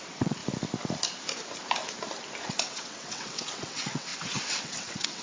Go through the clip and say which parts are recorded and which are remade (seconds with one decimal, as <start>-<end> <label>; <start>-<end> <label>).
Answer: 0.0-0.4 remade; 0.4-2.5 recorded; 2.5-5.2 remade